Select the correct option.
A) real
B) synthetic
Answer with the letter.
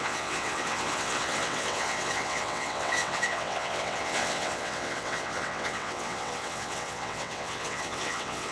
B